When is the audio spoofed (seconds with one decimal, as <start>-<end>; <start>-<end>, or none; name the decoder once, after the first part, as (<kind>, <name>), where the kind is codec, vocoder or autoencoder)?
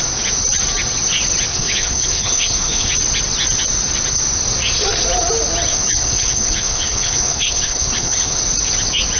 1.5-2.9 (codec, HILCodec); 5.7-8.4